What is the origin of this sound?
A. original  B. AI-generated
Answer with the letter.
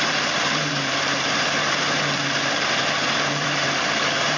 B